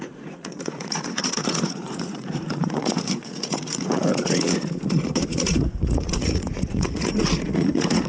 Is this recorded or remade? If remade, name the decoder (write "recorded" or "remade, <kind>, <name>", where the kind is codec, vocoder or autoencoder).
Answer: remade, vocoder, Vocos